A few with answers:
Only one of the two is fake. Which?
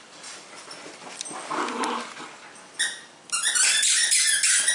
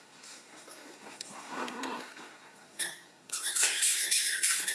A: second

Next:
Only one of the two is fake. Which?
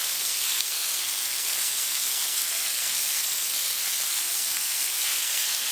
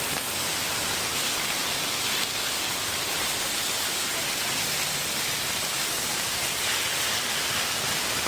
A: first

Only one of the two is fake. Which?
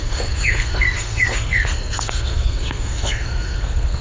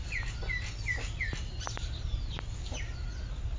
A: first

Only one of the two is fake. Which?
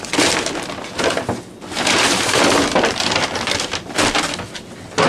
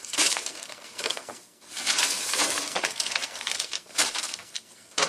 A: second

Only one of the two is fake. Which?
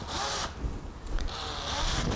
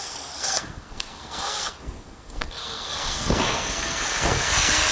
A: second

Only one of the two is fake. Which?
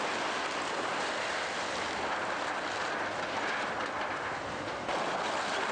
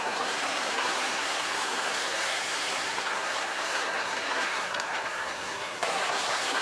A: second